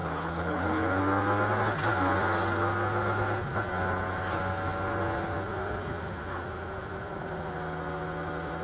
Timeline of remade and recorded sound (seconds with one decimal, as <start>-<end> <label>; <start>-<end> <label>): 0.0-1.0 remade; 1.0-8.6 recorded